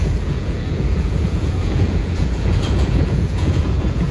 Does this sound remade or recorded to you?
remade